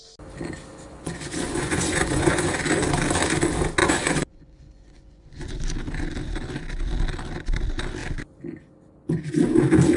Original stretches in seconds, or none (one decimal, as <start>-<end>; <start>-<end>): 0.0-0.7; 2.5-3.8; 5.5-10.0